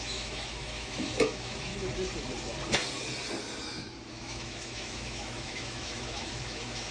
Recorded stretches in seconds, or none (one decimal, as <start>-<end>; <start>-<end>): 1.7-4.1